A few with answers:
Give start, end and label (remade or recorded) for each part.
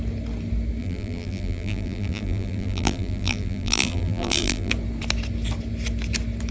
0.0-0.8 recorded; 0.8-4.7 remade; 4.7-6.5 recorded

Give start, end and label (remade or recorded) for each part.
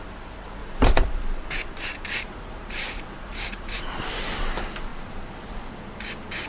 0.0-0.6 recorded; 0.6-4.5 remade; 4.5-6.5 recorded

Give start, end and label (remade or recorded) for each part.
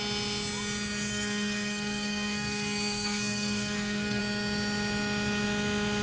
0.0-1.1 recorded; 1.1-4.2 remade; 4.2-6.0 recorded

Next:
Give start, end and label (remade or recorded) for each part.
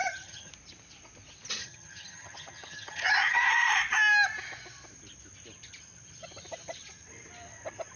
0.0-0.5 remade; 0.5-1.6 recorded; 1.6-3.5 remade; 3.5-8.0 recorded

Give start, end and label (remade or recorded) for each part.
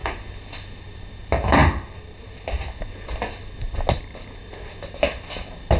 0.0-5.8 recorded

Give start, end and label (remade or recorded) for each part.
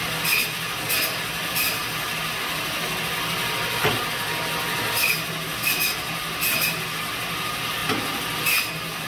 0.0-9.1 recorded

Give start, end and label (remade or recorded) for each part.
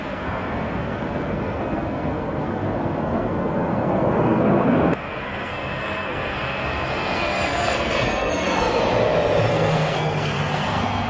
0.0-8.8 remade; 8.8-9.5 recorded; 9.5-11.1 remade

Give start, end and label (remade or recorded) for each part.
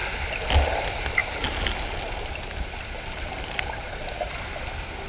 0.0-5.1 recorded